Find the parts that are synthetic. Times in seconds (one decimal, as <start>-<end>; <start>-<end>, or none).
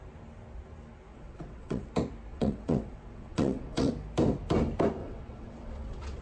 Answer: 1.1-1.9; 2.3-3.9; 5.0-6.2